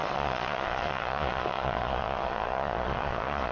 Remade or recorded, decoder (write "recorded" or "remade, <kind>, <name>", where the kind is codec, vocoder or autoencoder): remade, vocoder, Vocos